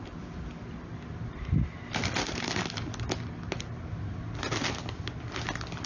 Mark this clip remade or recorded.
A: recorded